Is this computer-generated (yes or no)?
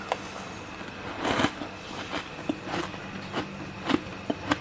no